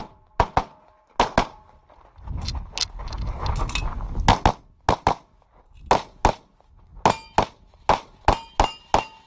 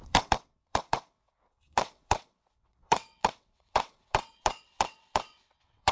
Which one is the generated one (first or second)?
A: second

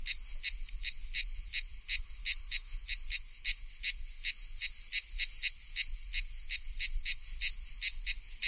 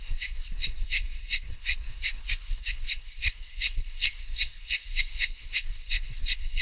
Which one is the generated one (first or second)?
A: second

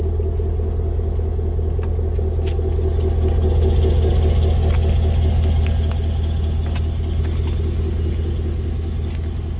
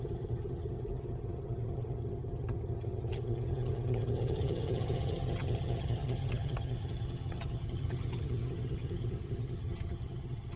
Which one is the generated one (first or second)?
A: second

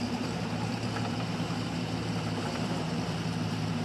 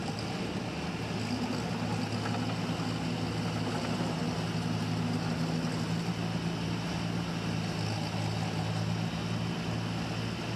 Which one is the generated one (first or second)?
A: first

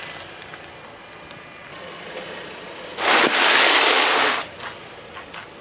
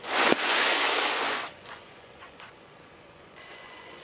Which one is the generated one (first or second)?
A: second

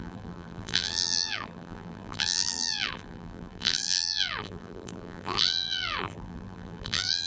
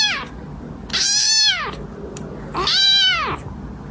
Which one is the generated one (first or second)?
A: first